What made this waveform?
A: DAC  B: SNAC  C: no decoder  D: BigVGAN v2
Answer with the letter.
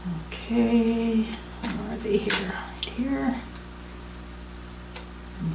C